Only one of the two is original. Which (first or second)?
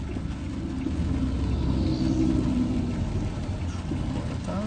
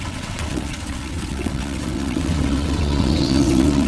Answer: first